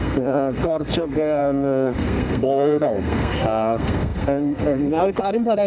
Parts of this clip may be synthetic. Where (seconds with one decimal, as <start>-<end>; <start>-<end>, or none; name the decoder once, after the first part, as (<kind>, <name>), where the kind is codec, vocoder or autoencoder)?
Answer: 0.0-5.7 (codec, SNAC)